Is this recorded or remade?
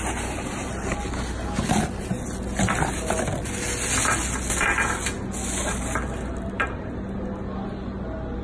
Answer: recorded